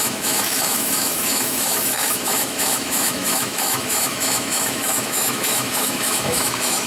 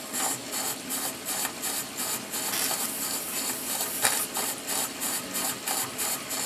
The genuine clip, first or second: second